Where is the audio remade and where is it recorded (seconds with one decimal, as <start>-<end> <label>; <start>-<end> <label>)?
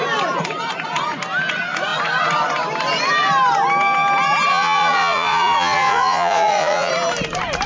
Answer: 0.0-4.5 recorded; 4.5-6.9 remade; 6.9-7.7 recorded